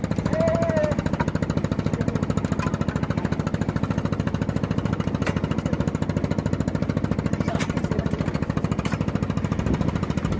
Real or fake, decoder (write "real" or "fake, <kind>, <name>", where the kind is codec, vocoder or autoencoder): real